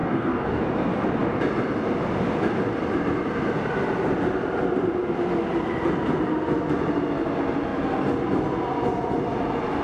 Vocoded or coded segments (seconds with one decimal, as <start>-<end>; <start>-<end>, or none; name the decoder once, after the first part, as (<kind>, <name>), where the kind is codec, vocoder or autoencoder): 0.0-0.6 (codec, DAC)